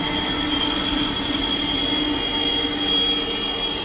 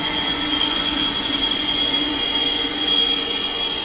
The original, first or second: first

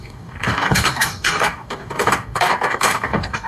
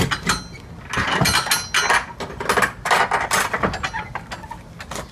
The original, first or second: second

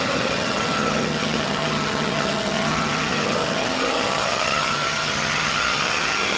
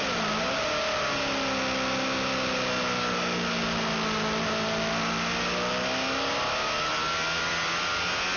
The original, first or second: second